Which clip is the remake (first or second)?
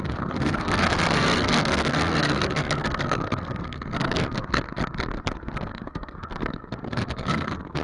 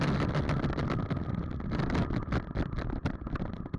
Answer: first